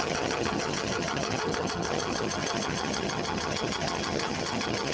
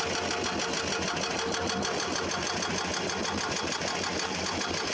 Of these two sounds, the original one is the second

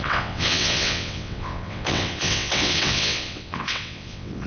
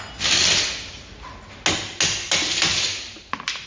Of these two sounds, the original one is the second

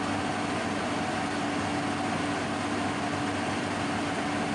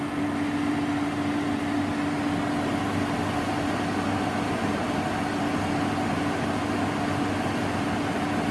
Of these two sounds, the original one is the first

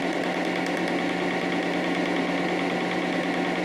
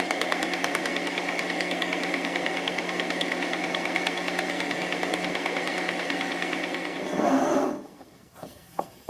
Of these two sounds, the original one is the first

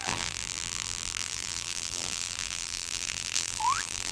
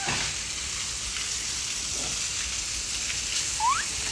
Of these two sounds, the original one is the second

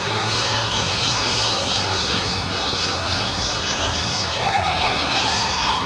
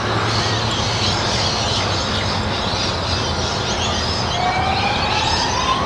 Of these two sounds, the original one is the second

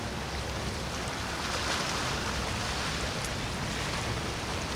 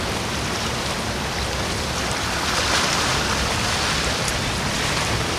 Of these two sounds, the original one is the first